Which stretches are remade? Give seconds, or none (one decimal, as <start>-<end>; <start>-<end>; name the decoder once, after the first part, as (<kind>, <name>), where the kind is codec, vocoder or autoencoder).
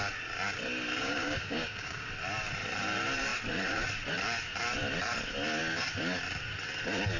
1.0-2.1 (codec, DAC)